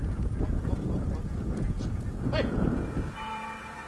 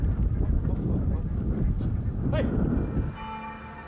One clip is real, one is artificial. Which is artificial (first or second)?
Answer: first